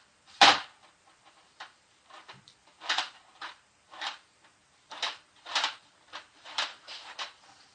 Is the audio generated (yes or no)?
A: yes